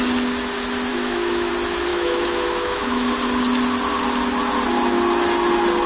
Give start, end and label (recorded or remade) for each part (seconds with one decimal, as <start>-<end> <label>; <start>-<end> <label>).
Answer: 0.0-0.9 recorded; 0.9-1.5 remade; 1.5-1.9 recorded; 1.9-3.1 remade; 3.1-5.9 recorded